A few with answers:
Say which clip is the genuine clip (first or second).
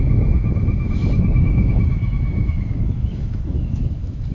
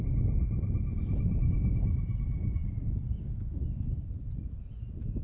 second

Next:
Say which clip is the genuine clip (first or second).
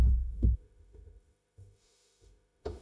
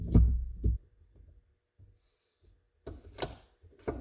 second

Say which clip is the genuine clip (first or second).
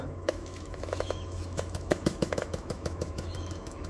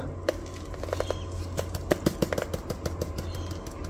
second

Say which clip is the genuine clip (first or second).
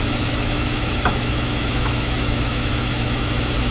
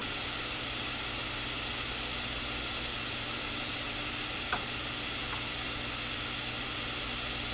second